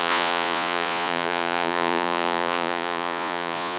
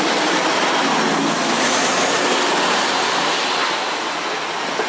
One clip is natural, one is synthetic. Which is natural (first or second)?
second